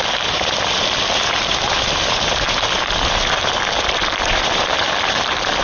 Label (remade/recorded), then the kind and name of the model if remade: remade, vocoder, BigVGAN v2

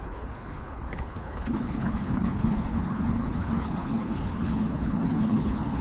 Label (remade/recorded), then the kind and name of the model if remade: remade, codec, HILCodec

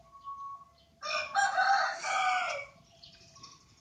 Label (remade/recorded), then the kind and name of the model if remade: recorded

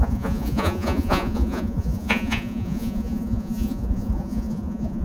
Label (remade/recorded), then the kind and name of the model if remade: remade, vocoder, Vocos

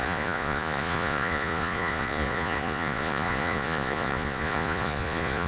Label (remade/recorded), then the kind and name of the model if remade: remade, vocoder, Vocos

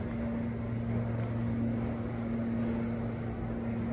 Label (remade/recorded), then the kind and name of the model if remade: recorded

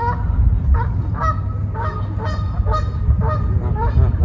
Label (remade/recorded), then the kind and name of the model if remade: recorded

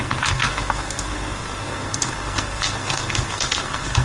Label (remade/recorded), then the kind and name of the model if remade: remade, codec, SNAC